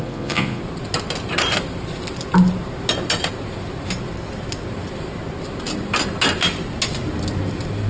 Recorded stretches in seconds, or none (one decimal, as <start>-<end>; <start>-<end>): 0.6-7.9